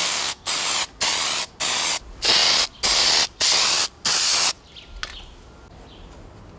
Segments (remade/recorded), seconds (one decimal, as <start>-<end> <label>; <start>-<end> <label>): 0.0-0.5 remade; 0.5-6.6 recorded